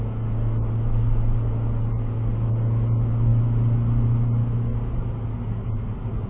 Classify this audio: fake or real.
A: real